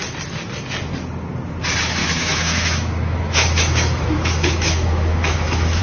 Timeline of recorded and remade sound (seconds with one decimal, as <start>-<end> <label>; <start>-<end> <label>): 0.0-2.0 recorded; 2.0-5.8 remade